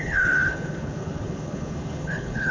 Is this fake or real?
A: fake